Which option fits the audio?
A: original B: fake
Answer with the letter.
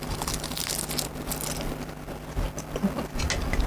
A